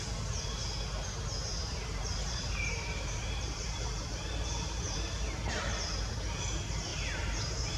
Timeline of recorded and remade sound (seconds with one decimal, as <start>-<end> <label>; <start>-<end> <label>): 0.0-1.5 recorded; 1.5-5.5 remade; 5.5-6.9 recorded; 6.9-7.8 remade

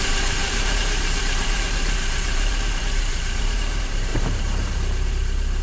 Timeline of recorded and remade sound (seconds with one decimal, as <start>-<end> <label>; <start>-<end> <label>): 0.0-5.6 remade

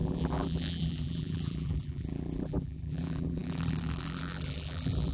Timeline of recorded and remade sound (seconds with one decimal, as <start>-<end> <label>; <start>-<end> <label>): 0.0-5.1 remade

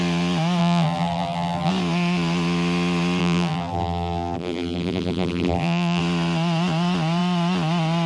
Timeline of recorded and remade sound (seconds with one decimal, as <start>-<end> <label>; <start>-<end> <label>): 0.0-0.6 recorded; 0.6-1.7 remade; 1.7-3.2 recorded; 3.2-6.0 remade; 6.0-8.1 recorded

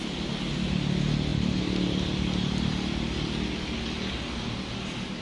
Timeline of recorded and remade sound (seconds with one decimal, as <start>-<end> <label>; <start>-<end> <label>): 0.0-5.2 recorded